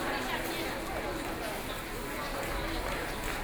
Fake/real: real